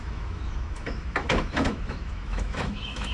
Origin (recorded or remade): remade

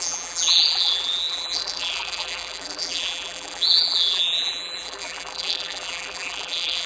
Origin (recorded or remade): remade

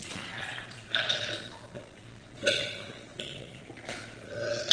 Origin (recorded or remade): remade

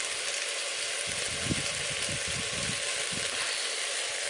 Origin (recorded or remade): recorded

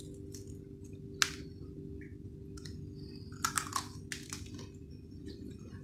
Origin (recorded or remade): recorded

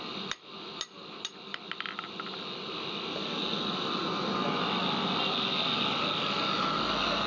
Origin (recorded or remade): recorded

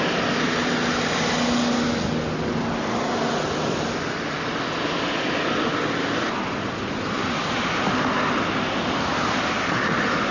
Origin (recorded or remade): recorded